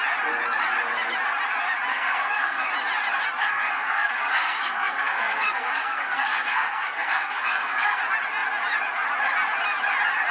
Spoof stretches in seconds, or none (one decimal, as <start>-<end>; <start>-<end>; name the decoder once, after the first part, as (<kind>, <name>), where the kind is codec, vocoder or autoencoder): 1.9-2.7 (codec, SNAC); 3.4-8.0